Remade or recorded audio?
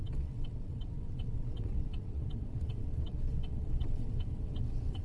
remade